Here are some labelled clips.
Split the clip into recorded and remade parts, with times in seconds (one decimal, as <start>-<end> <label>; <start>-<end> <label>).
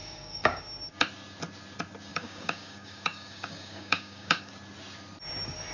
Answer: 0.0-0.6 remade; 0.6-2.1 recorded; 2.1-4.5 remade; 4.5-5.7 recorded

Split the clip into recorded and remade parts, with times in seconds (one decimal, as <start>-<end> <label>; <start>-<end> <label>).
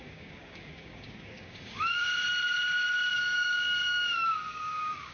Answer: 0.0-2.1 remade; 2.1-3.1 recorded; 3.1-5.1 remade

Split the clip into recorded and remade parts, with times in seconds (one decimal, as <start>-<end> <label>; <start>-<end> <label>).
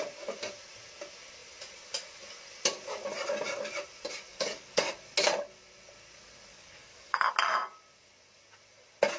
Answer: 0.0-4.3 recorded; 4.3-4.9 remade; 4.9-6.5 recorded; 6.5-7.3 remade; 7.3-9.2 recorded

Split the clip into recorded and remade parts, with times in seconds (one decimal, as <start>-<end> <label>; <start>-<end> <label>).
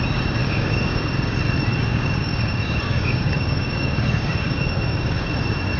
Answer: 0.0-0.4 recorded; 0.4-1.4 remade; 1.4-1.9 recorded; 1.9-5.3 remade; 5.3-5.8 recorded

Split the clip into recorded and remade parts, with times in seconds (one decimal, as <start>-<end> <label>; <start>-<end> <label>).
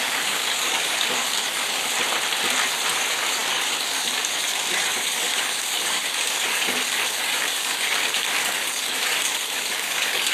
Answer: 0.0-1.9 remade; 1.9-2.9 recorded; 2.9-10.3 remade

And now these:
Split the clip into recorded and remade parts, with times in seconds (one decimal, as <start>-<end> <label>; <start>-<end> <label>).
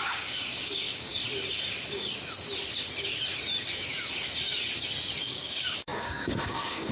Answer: 0.0-1.1 remade; 1.1-5.2 recorded; 5.2-6.9 remade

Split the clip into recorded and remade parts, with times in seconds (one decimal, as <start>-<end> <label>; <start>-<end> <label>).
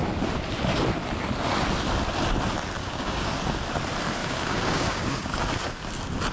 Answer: 0.0-2.8 recorded; 2.8-3.3 remade; 3.3-4.2 recorded; 4.2-5.4 remade; 5.4-6.3 recorded